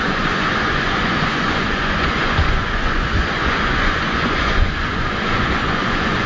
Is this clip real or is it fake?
fake